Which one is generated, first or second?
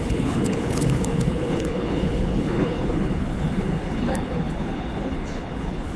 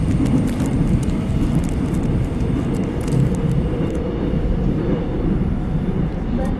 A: first